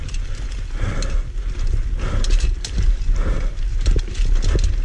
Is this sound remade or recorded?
recorded